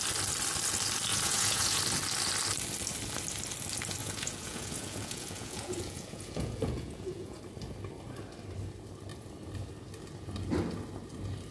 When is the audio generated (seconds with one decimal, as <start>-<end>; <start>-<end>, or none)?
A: 1.1-1.8; 4.0-7.4